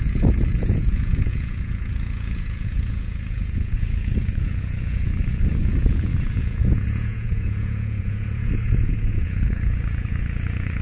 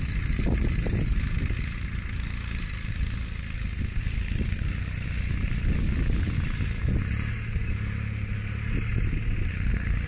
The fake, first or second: first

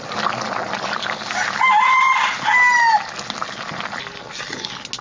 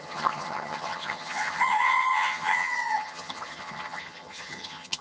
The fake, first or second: second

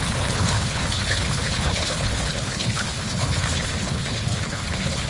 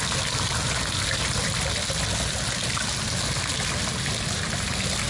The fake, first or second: first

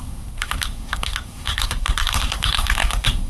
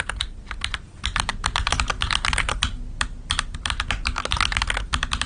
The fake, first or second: first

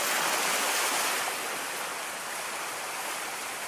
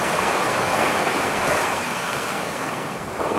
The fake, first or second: second